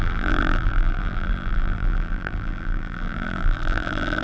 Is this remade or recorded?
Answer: remade